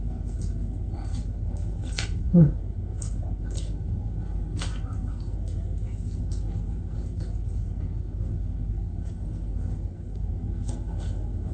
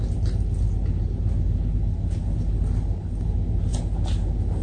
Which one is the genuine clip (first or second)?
second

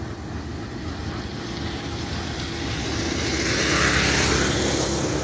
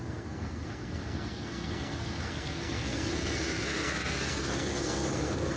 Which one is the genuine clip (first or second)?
first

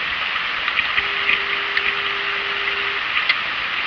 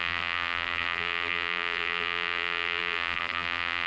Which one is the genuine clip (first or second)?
first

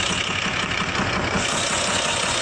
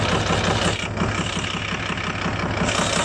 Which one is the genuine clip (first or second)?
second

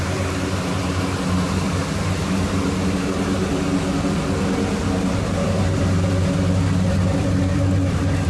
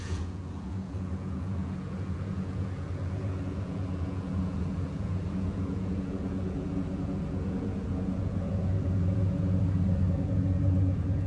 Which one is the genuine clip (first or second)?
first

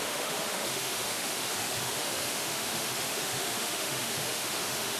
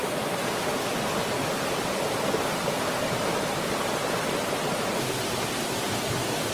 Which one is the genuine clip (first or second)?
second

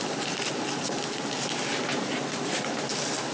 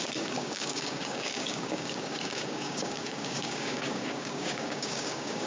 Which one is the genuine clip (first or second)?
first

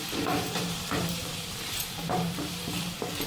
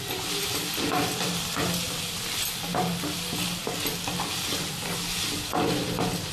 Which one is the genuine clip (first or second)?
second